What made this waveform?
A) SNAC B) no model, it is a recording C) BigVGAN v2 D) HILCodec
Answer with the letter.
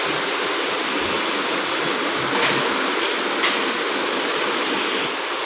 B